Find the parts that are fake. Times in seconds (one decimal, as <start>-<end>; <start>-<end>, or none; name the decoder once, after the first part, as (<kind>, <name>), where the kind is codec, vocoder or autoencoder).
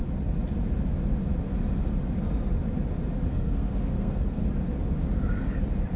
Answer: 3.3-4.4 (codec, SNAC)